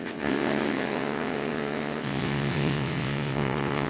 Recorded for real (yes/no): no